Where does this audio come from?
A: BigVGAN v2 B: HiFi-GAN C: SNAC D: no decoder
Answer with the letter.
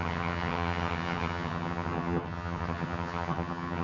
B